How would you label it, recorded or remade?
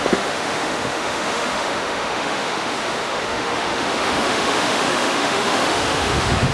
remade